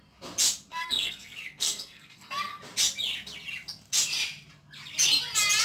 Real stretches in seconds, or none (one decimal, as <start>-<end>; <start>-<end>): 0.0-0.7; 2.6-5.6